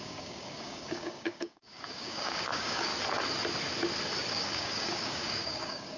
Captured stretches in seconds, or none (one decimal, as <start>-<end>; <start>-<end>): 2.9-4.3